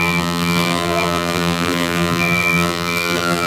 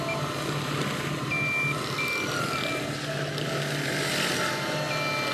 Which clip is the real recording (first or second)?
second